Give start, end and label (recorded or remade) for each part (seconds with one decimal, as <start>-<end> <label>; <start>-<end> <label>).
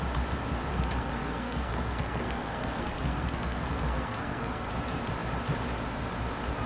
0.0-0.7 recorded; 0.7-4.7 remade; 4.7-6.7 recorded